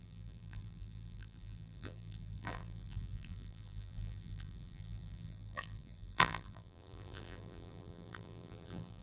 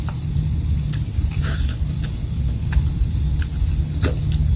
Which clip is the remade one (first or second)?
first